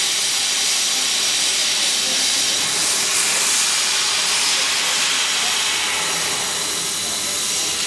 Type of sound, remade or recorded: recorded